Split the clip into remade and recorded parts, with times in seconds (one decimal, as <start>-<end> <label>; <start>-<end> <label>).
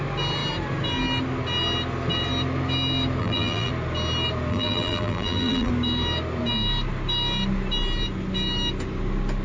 0.0-3.2 recorded; 3.2-3.7 remade; 3.7-4.5 recorded; 4.5-5.7 remade; 5.7-9.4 recorded